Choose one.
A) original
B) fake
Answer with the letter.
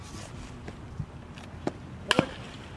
A